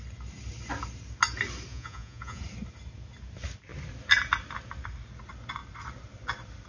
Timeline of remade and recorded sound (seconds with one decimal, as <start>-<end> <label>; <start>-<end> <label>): 0.0-1.7 recorded; 1.7-2.4 remade; 2.4-6.7 recorded